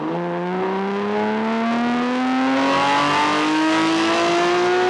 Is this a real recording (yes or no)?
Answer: yes